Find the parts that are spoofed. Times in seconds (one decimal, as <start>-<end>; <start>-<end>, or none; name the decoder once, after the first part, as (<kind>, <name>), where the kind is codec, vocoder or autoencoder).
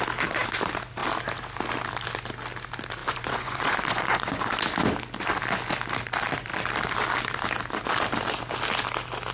3.0-4.4 (vocoder, Vocos)